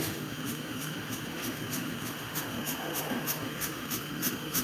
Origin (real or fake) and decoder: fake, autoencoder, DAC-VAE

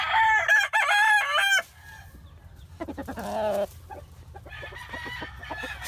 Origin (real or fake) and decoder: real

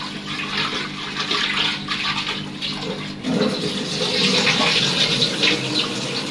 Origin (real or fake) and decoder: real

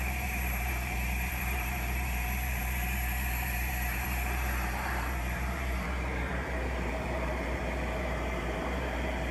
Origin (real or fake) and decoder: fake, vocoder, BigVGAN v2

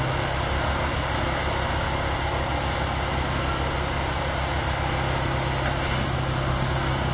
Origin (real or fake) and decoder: real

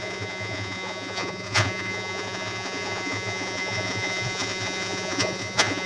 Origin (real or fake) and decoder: fake, vocoder, Vocos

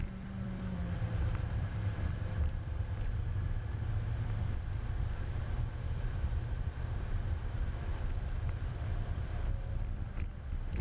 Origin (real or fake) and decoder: fake, vocoder, BigVGAN v2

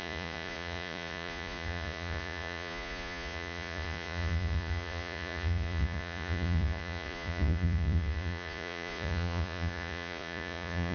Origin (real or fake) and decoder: fake, vocoder, Vocos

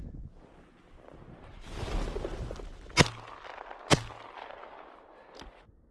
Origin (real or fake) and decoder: real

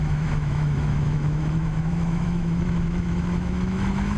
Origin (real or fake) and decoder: fake, autoencoder, DAC-VAE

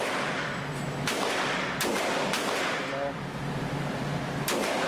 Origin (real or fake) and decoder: real